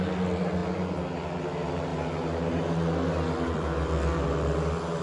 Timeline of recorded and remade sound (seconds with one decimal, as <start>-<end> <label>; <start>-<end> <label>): 0.0-5.0 recorded